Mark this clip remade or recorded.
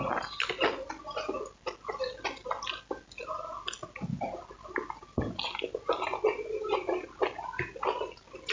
recorded